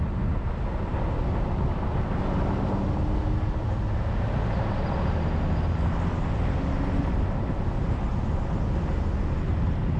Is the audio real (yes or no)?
yes